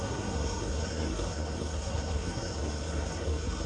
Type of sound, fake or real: fake